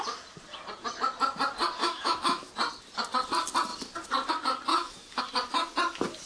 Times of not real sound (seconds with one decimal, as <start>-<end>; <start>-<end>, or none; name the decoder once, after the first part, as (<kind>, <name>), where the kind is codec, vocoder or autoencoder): 1.8-2.5 (autoencoder, DAC-VAE); 4.7-5.2